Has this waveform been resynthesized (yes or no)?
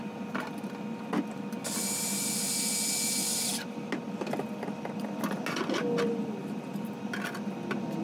no